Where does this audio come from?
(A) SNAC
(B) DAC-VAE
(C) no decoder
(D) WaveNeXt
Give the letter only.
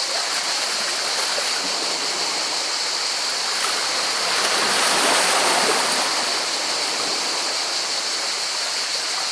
C